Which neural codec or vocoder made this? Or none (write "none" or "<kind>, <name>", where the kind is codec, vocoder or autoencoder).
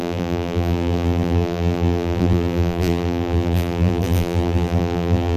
vocoder, BigVGAN v2